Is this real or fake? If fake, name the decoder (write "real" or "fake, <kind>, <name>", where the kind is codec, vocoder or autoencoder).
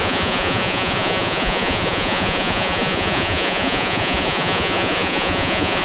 fake, vocoder, Vocos